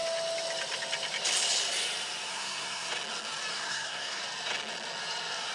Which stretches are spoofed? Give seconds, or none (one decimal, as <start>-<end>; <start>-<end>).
2.3-2.9; 3.5-4.2